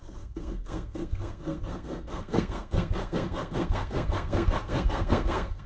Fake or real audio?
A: fake